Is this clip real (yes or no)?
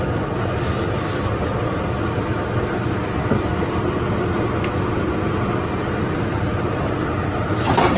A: yes